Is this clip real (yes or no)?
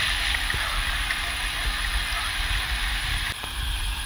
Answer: yes